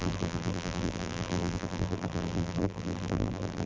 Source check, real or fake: fake